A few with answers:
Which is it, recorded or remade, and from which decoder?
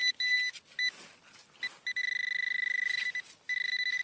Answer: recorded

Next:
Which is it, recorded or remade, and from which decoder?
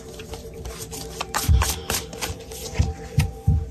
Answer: remade, vocoder, BigVGAN v2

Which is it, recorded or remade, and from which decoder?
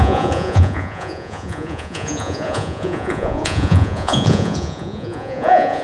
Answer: remade, vocoder, Vocos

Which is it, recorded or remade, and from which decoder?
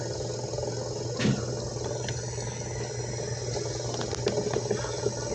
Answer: recorded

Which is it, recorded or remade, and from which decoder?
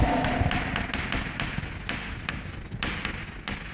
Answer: recorded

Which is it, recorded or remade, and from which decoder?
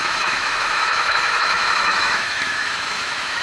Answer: remade, autoencoder, DAC-VAE